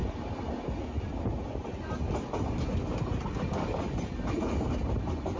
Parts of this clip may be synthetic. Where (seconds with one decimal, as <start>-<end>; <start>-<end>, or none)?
none